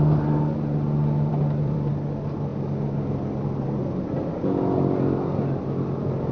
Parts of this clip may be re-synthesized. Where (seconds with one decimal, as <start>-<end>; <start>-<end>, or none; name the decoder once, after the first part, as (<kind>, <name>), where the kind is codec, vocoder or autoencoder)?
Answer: 1.3-1.9 (vocoder, BigVGAN v2)